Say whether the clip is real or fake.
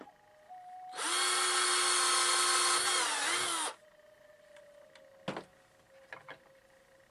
real